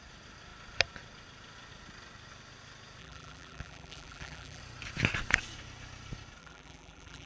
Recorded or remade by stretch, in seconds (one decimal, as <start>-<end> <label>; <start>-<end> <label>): 0.0-3.0 recorded; 3.0-4.6 remade; 4.6-6.4 recorded; 6.4-7.3 remade